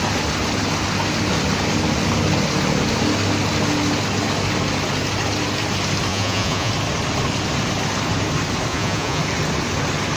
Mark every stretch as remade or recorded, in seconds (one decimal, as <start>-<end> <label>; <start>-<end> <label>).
0.0-6.1 recorded; 6.1-6.7 remade; 6.7-8.7 recorded; 8.7-9.2 remade; 9.2-10.2 recorded